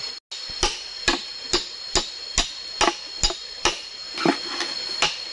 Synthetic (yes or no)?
no